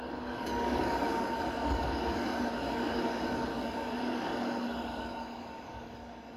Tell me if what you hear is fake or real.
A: fake